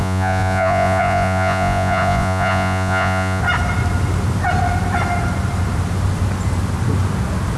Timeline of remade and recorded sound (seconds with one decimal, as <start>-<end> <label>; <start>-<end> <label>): 0.0-3.4 remade; 3.4-7.6 recorded